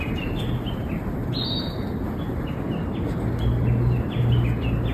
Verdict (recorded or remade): recorded